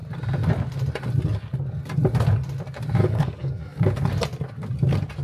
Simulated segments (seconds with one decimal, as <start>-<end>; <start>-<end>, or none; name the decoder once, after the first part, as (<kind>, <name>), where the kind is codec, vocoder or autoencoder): 3.0-3.8 (codec, DAC)